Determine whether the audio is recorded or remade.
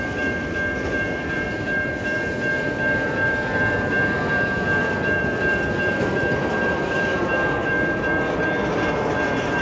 remade